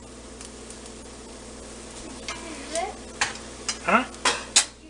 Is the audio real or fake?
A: real